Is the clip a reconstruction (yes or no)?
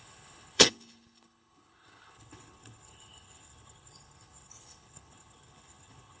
yes